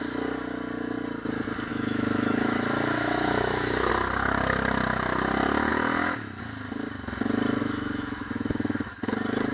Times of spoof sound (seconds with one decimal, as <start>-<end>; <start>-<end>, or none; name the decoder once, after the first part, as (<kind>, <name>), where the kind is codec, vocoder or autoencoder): 1.7-3.9 (autoencoder, DAC-VAE); 5.7-6.4; 7.6-9.0